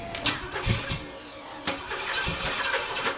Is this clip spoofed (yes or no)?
no